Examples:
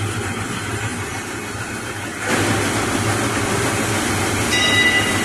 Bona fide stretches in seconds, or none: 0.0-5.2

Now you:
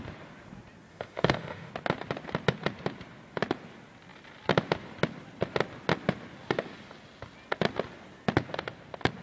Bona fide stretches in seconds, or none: 0.0-0.9; 1.7-9.2

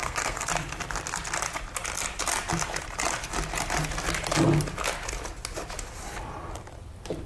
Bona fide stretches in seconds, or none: 0.5-7.3

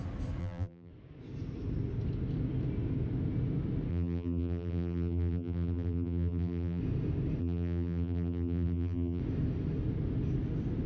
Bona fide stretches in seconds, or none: 0.0-0.4; 0.9-3.9; 6.8-7.4; 9.2-10.9

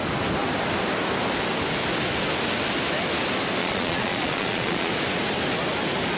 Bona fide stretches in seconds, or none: 0.0-3.6; 4.9-6.2

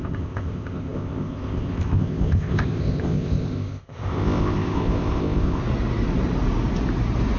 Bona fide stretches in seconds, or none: 5.6-7.4

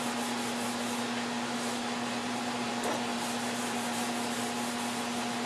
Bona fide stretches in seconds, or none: 0.0-2.2; 2.7-3.1; 4.1-5.5